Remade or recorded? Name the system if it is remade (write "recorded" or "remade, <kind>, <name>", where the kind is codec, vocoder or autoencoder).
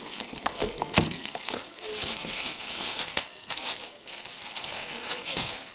remade, codec, SNAC